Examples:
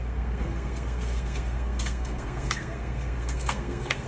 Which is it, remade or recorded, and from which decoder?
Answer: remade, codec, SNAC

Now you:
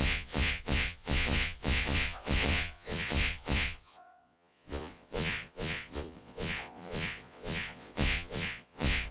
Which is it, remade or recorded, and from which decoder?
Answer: remade, vocoder, Vocos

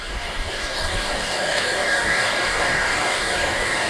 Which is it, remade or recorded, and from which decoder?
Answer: remade, codec, DAC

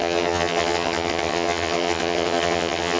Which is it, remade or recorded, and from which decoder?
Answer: remade, vocoder, HiFi-GAN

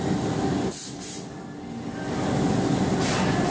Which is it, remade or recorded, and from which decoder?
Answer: recorded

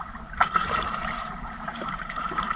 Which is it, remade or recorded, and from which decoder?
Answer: remade, vocoder, BigVGAN v2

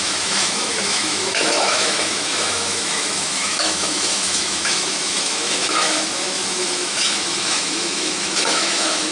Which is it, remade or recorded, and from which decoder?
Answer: remade, autoencoder, DAC-VAE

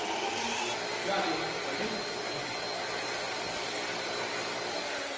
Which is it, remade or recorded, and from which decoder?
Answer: recorded